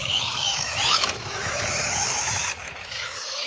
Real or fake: fake